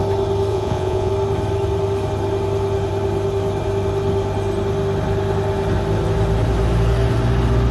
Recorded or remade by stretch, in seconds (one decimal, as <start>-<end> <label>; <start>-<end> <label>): 0.0-0.5 recorded; 0.5-1.1 remade; 1.1-7.7 recorded